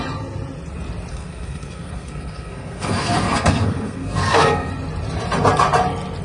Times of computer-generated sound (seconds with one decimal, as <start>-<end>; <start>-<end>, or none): 1.1-4.7